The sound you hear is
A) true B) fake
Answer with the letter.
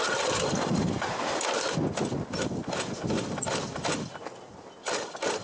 A